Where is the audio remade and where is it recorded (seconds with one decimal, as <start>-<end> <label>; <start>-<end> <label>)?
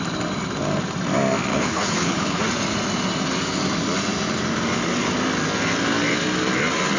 0.0-1.5 recorded; 1.5-2.4 remade; 2.4-7.0 recorded